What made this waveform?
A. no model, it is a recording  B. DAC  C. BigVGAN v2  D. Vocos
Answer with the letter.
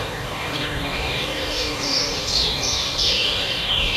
B